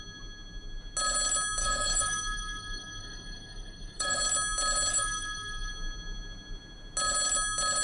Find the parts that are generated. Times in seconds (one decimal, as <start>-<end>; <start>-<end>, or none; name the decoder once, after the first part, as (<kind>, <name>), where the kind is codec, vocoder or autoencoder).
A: 1.6-4.2 (codec, DAC); 4.9-5.7